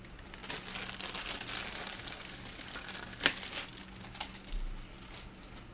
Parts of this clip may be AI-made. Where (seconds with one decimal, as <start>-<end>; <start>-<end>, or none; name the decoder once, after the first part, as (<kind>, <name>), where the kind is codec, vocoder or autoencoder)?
none